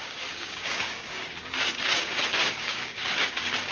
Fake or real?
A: fake